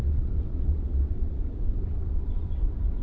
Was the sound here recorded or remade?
remade